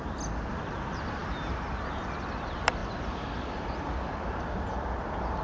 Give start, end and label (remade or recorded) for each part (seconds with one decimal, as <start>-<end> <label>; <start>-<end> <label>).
0.0-5.4 recorded